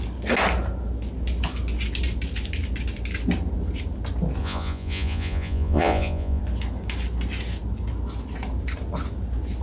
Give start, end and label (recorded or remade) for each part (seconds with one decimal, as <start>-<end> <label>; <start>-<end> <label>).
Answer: 0.0-4.4 recorded; 4.4-6.4 remade; 6.4-9.6 recorded